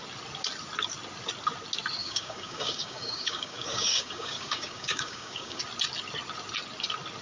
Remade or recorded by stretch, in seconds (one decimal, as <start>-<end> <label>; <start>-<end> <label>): 0.0-2.0 recorded; 2.0-5.6 remade; 5.6-7.2 recorded